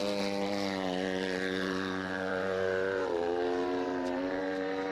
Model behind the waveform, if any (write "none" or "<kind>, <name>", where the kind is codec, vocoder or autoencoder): vocoder, BigVGAN v2